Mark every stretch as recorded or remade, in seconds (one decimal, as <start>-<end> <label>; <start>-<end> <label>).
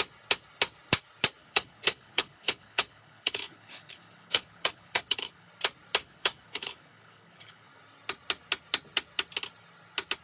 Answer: 0.0-1.4 recorded; 1.4-5.5 remade; 5.5-6.0 recorded; 6.0-7.7 remade; 7.7-10.2 recorded